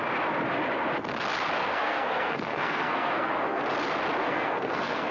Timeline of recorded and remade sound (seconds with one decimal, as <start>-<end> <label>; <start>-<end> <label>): 0.0-1.6 recorded; 1.6-3.6 remade; 3.6-4.2 recorded; 4.2-5.1 remade